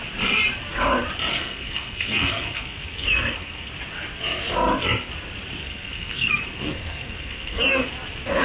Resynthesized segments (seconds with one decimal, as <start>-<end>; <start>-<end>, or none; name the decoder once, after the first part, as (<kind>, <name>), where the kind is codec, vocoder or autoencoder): 1.3-3.7 (codec, SNAC); 5.6-7.9